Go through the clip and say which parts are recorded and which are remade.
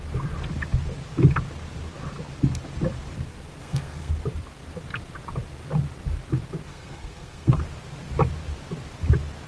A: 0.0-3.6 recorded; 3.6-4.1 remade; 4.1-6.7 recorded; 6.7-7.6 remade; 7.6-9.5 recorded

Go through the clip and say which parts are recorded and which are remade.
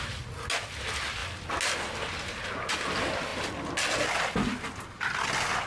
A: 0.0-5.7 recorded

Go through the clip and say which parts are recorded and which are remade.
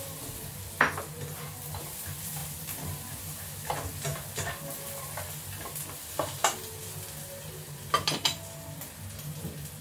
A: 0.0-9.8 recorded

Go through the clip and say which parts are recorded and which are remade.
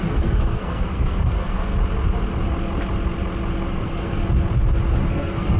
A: 0.0-1.7 remade; 1.7-3.7 recorded; 3.7-4.2 remade; 4.2-5.1 recorded; 5.1-5.6 remade